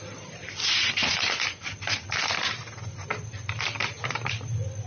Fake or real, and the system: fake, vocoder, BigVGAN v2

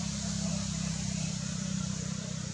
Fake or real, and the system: fake, vocoder, BigVGAN v2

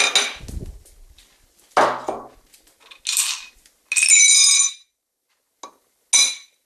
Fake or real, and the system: real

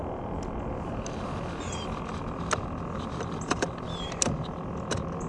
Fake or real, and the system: real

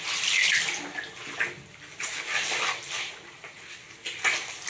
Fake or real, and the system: real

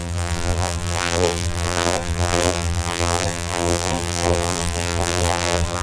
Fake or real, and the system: fake, vocoder, BigVGAN v2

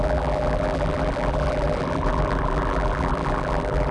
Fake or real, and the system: fake, vocoder, BigVGAN v2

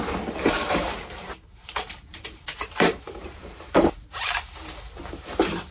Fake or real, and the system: fake, vocoder, BigVGAN v2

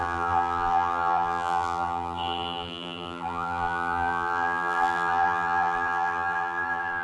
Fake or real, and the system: fake, vocoder, BigVGAN v2